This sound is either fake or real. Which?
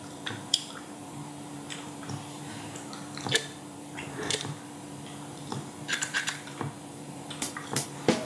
fake